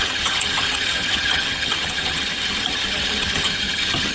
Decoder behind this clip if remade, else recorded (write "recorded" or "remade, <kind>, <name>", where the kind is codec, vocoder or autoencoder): remade, vocoder, HiFi-GAN